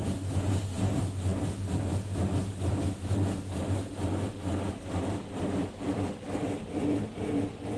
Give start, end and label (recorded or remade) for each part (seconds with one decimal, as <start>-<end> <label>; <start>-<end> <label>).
0.0-5.6 recorded; 5.6-7.3 remade; 7.3-7.8 recorded